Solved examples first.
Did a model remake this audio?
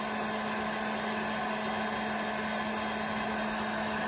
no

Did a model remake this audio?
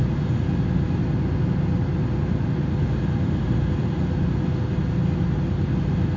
no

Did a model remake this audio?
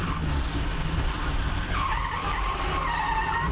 no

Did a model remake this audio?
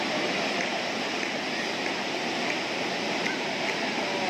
no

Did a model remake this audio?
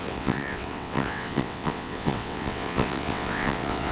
yes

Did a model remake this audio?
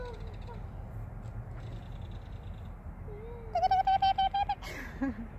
no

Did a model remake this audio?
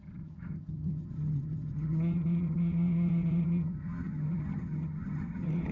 yes